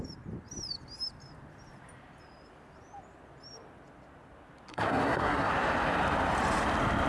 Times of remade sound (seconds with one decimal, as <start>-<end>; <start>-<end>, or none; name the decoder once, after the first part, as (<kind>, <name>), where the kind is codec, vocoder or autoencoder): 4.7-5.5 (codec, SNAC)